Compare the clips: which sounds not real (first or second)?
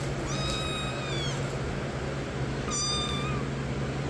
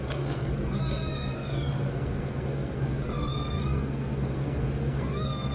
second